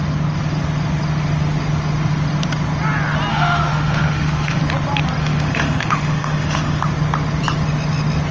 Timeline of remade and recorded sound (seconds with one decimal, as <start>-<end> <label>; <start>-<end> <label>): 0.0-3.3 recorded; 3.3-4.6 remade; 4.6-5.2 recorded; 5.2-6.8 remade; 6.8-8.3 recorded